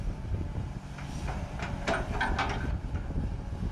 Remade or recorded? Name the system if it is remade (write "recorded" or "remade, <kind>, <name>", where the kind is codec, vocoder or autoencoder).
recorded